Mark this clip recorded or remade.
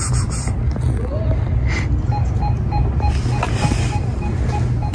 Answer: recorded